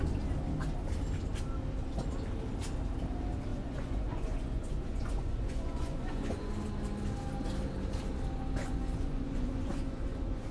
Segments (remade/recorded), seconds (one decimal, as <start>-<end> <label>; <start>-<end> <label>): 0.0-3.5 recorded; 3.5-6.5 remade; 6.5-8.6 recorded; 8.6-10.5 remade